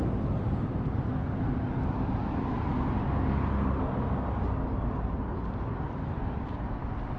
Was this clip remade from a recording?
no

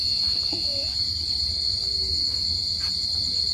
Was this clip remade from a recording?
yes